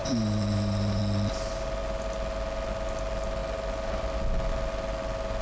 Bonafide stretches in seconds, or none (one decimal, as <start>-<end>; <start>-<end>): 1.0-5.4